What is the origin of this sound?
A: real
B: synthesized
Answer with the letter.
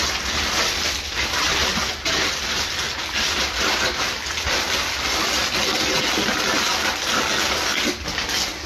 A